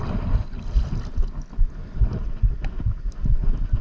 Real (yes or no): yes